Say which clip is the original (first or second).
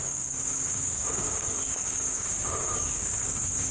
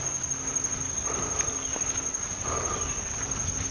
second